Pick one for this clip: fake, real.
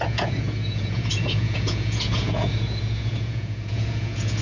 fake